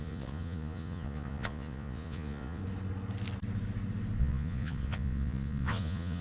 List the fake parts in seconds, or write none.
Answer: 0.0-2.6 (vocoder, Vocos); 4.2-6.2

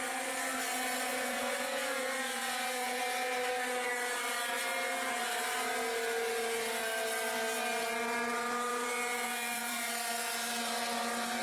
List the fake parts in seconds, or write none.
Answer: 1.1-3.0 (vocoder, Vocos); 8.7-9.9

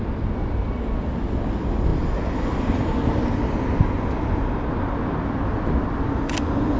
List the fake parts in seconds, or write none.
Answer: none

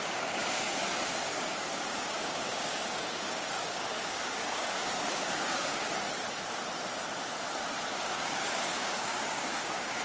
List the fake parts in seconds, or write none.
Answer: 0.0-5.9 (codec, DAC); 7.9-10.0

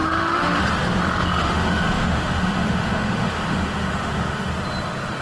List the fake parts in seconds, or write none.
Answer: 0.0-0.6 (autoencoder, DAC-VAE); 1.4-4.5

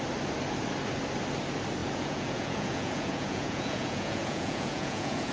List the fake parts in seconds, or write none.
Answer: 1.8-5.3 (vocoder, Vocos)